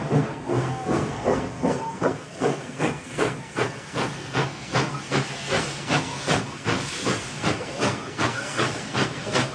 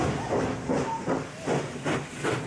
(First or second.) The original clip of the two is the second